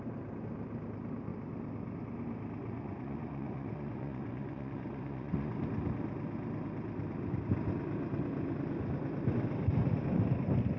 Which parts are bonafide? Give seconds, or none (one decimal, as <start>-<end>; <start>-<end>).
0.0-2.6; 5.6-10.8